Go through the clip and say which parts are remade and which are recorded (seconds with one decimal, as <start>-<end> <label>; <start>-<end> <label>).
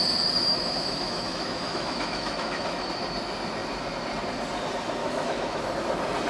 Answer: 0.0-0.5 recorded; 0.5-2.9 remade; 2.9-5.0 recorded; 5.0-5.6 remade; 5.6-6.3 recorded